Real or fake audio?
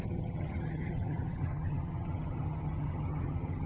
fake